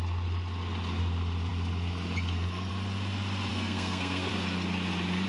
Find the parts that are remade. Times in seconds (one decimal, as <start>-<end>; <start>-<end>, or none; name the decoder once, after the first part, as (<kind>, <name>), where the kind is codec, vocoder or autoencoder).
3.5-4.3 (codec, SNAC)